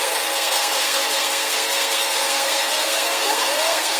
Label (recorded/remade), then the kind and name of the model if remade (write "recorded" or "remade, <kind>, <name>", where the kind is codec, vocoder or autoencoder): remade, codec, SNAC